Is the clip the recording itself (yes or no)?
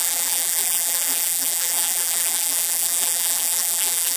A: no